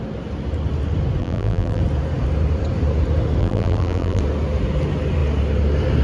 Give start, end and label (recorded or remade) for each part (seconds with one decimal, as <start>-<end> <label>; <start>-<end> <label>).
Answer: 0.0-1.2 recorded; 1.2-1.8 remade; 1.8-3.4 recorded; 3.4-4.2 remade; 4.2-6.0 recorded